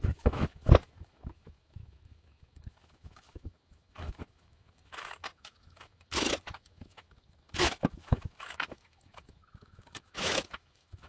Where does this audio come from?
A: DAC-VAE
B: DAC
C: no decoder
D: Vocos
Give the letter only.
A